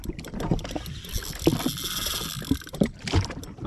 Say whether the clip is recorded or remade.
recorded